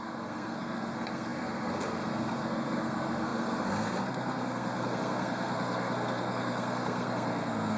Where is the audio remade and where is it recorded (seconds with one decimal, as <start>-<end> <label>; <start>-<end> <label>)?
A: 0.0-7.8 remade